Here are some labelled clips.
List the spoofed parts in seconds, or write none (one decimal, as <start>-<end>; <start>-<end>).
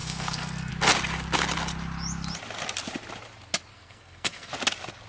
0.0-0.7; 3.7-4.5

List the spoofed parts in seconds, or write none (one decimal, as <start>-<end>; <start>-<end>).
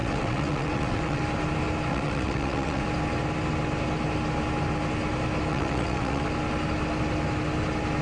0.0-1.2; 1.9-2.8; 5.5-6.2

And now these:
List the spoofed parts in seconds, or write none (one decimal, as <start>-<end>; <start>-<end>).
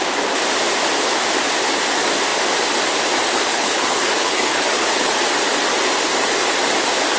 3.5-5.1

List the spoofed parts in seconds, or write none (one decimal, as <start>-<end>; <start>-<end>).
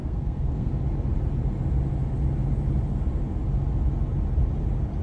0.0-0.7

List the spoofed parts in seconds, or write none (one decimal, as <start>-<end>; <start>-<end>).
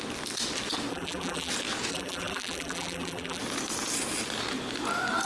0.9-1.5; 1.9-3.4